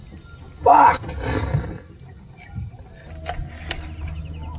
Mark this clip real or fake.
real